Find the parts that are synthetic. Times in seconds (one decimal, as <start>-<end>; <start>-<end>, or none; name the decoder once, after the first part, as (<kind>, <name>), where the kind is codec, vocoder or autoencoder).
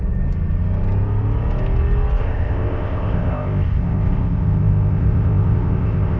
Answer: 2.2-6.2 (codec, ZipCodec)